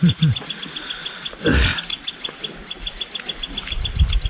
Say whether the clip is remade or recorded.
recorded